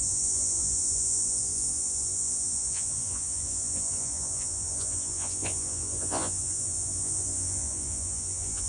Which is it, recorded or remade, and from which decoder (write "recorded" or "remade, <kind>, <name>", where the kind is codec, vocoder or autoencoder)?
remade, vocoder, Vocos